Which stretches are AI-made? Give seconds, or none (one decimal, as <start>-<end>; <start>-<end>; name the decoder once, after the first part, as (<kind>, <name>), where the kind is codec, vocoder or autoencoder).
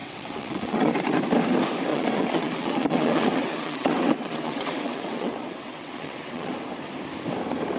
0.0-0.9 (vocoder, WaveNeXt); 1.9-6.5